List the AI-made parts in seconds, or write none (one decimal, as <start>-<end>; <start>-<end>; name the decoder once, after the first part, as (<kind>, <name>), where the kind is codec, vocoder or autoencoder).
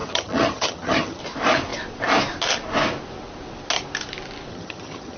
0.0-1.2 (vocoder, HiFi-GAN); 4.5-5.2